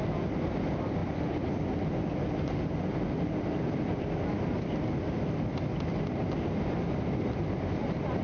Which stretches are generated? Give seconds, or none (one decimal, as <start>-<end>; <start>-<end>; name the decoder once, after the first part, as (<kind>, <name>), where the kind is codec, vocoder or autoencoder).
none